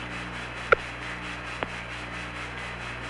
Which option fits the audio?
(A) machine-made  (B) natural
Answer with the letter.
B